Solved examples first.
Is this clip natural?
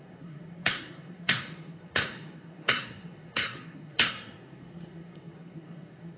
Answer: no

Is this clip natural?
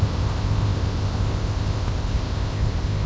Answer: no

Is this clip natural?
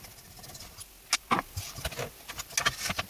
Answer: yes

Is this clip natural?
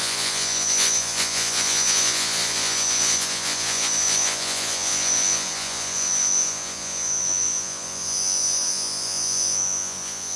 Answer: no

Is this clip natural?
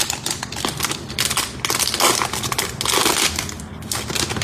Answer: yes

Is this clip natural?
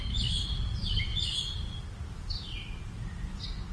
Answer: yes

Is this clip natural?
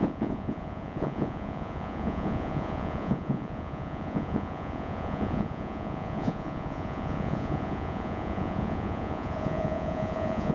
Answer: no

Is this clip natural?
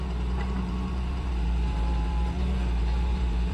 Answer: no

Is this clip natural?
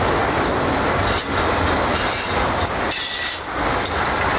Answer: yes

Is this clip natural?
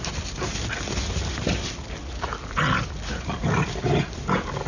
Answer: yes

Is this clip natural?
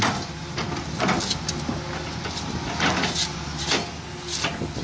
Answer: yes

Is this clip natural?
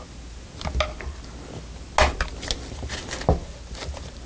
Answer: yes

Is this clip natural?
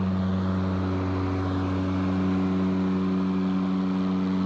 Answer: yes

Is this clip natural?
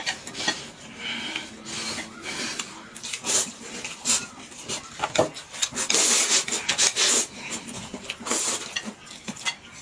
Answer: yes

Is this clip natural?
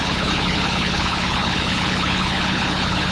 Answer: no